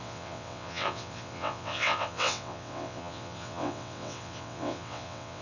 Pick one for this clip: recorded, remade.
remade